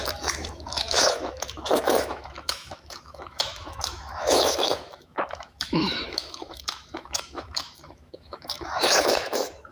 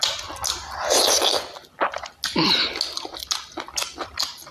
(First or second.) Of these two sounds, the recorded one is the second